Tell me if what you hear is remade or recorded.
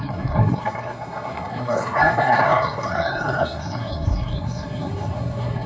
remade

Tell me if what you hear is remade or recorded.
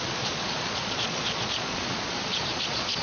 remade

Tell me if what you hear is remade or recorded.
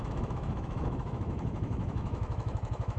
remade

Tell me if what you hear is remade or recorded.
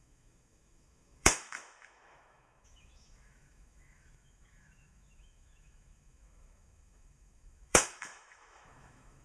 remade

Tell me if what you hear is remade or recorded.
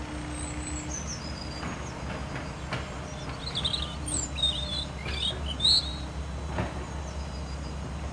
recorded